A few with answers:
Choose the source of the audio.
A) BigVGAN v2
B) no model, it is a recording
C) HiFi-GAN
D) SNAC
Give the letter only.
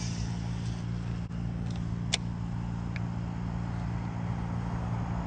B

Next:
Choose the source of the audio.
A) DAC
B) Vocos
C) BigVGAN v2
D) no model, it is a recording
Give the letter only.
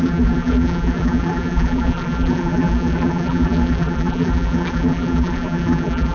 C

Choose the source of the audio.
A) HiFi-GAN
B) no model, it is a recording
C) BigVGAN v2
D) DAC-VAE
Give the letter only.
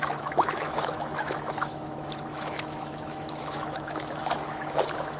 D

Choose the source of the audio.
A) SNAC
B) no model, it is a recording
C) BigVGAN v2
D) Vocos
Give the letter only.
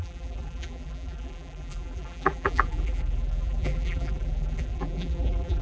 C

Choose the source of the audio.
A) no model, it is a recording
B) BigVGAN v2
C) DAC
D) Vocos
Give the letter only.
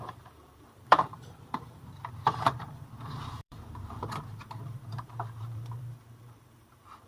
B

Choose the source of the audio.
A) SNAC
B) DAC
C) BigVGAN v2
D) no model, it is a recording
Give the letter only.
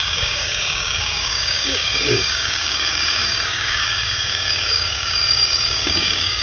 B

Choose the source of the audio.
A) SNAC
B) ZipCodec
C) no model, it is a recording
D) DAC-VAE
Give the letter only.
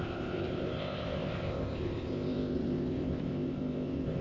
B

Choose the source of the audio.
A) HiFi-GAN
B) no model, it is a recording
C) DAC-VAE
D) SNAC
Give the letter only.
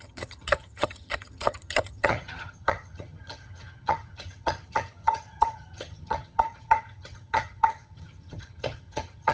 A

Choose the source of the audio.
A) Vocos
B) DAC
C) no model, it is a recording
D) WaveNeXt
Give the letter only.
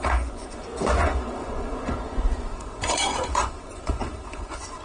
A